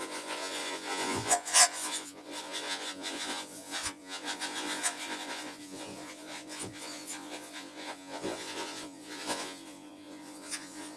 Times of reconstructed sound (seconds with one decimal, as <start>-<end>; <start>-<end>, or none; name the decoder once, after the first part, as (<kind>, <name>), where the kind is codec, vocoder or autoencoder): 0.0-11.0 (vocoder, Vocos)